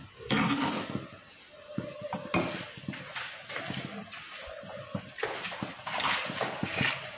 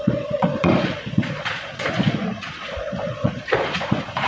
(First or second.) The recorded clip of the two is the first